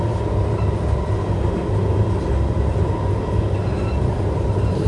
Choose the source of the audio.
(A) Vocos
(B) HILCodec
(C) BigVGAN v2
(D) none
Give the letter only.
D